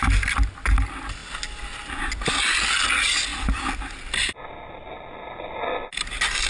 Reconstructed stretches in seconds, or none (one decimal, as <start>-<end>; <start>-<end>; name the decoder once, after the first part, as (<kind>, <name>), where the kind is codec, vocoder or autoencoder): none